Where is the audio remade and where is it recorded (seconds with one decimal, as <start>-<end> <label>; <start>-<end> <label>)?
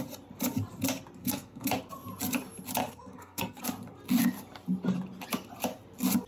0.0-1.2 recorded; 1.2-1.7 remade; 1.7-2.8 recorded; 2.8-3.6 remade; 3.6-6.3 recorded